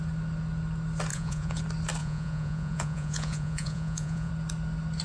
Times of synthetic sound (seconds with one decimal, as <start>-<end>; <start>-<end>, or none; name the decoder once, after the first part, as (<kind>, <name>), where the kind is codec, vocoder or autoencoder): 1.1-1.6 (vocoder, Vocos); 2.0-4.3